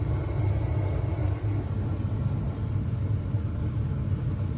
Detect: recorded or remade recorded